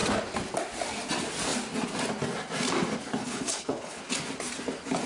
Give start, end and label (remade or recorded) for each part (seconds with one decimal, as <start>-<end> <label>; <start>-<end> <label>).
0.0-3.2 recorded; 3.2-4.0 remade; 4.0-5.1 recorded